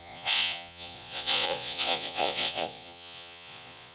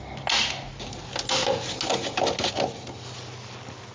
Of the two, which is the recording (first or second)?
second